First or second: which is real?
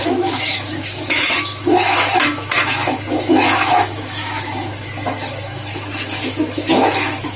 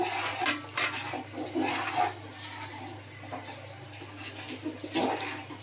second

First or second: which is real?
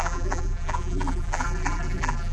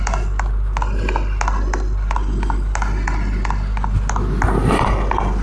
second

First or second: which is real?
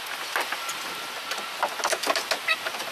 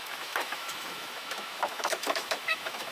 first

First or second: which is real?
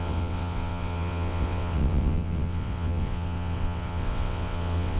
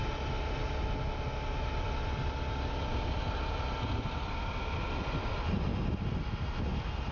second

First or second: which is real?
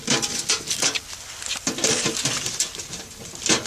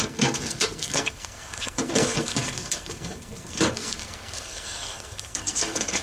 first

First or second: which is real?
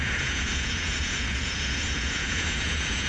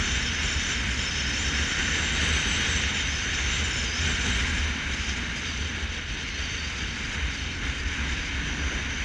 second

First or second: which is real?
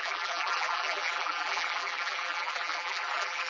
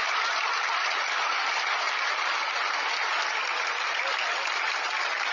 second